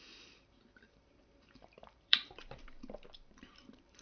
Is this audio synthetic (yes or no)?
yes